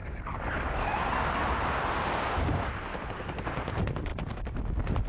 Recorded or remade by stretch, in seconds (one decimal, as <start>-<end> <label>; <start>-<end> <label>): 0.0-3.1 recorded; 3.1-4.1 remade; 4.1-5.1 recorded